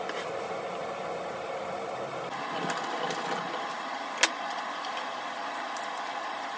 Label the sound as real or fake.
real